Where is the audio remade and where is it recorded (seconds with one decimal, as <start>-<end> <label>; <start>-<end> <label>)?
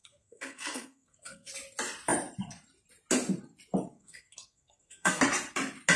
0.0-1.5 remade; 1.5-3.9 recorded; 3.9-5.2 remade; 5.2-6.0 recorded